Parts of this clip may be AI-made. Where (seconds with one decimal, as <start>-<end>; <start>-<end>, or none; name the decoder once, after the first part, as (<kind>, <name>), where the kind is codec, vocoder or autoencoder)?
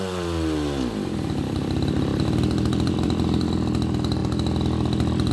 0.0-5.3 (vocoder, BigVGAN v2)